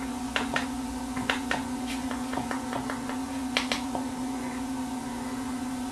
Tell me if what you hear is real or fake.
fake